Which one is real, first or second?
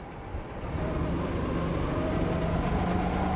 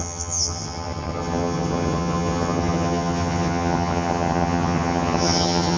first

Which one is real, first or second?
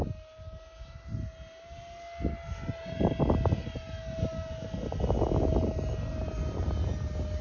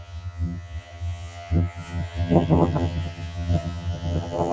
first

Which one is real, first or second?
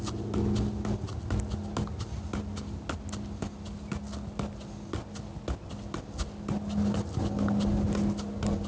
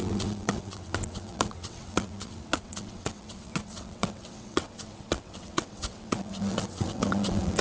first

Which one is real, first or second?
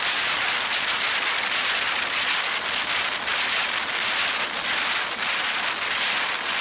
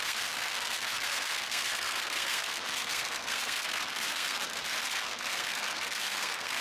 first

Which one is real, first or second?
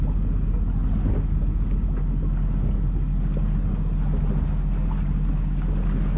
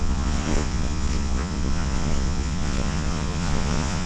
first